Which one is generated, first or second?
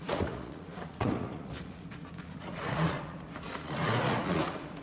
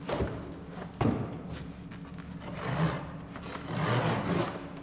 first